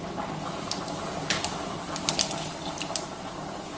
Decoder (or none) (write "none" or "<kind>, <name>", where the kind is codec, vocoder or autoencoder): none